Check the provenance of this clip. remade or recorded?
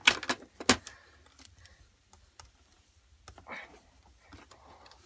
recorded